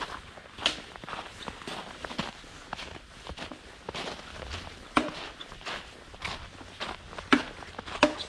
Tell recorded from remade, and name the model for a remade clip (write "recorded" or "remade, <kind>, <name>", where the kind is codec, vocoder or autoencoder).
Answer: recorded